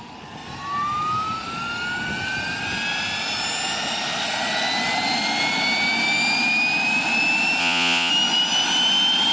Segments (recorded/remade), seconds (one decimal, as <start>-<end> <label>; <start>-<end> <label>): 0.0-7.6 recorded; 7.6-8.1 remade; 8.1-9.3 recorded